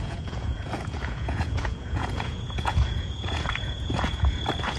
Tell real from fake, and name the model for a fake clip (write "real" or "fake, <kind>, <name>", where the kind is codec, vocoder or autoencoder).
fake, vocoder, Vocos